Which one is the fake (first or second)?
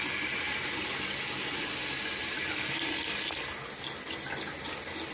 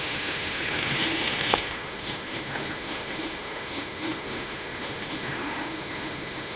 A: second